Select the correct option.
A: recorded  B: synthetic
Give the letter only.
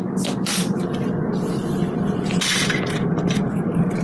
B